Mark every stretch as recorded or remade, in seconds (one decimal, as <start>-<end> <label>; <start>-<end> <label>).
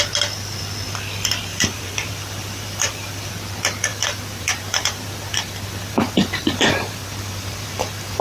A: 0.0-1.5 recorded; 1.5-3.3 remade; 3.3-3.9 recorded; 3.9-8.2 remade